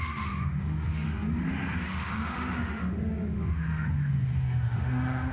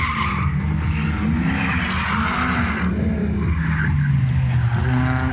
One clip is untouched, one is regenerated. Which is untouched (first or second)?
second